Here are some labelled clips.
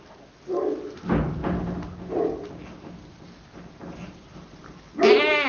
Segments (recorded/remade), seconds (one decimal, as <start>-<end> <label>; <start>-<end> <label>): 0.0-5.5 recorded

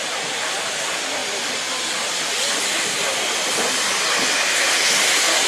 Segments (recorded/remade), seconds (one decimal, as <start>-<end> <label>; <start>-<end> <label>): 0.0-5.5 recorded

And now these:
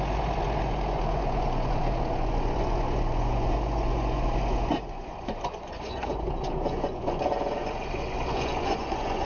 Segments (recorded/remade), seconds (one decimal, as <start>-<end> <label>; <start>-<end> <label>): 0.0-9.2 remade